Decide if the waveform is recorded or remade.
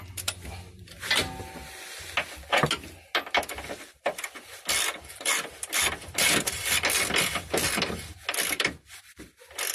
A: recorded